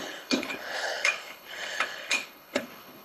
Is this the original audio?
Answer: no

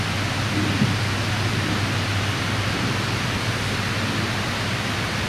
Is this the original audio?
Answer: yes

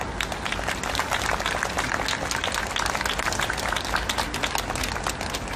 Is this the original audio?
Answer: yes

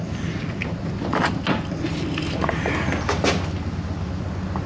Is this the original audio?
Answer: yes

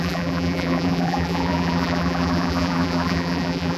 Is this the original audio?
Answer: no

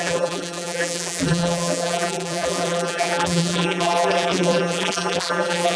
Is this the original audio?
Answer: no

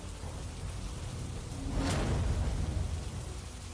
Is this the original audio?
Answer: yes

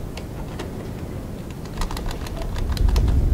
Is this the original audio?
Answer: yes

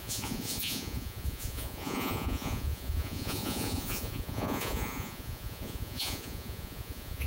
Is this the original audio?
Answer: no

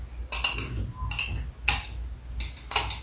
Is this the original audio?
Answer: yes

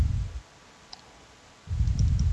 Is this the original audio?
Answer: yes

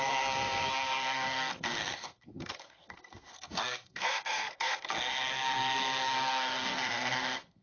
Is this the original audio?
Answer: no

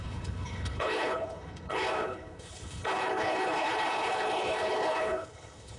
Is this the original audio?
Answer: no